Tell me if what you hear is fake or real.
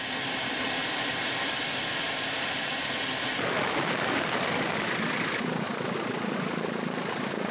real